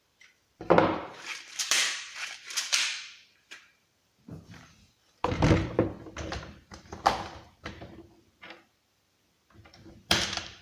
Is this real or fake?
fake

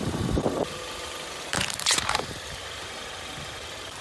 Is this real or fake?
fake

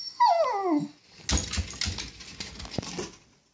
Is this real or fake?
real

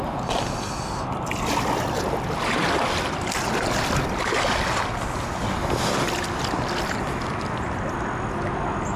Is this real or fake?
real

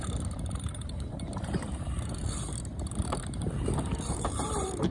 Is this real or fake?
fake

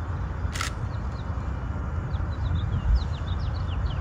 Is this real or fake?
real